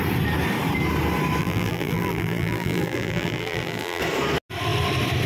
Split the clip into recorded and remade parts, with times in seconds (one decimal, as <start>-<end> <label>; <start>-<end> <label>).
0.0-1.4 recorded; 1.4-4.0 remade; 4.0-5.3 recorded